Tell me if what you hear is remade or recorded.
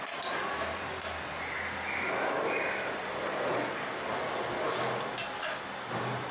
recorded